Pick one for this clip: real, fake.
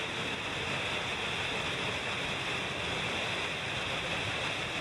real